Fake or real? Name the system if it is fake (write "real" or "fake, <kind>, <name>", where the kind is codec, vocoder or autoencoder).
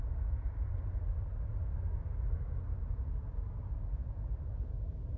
real